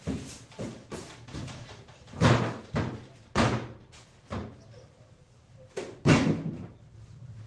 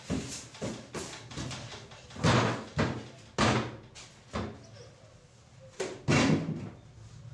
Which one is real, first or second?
second